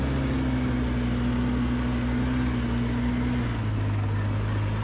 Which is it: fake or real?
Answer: real